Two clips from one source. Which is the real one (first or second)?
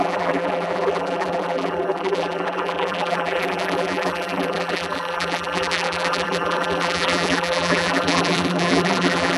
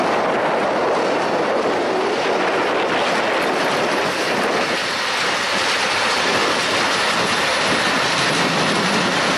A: second